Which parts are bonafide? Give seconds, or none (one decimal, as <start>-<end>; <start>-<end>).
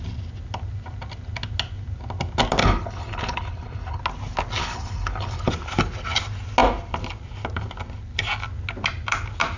0.0-2.6; 4.0-4.6; 5.5-9.6